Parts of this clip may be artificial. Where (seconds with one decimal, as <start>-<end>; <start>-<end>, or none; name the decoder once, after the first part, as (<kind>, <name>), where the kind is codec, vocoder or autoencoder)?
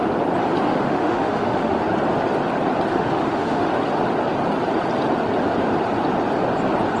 0.7-1.8 (autoencoder, DAC-VAE); 2.9-3.7